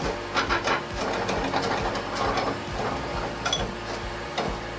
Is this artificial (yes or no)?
no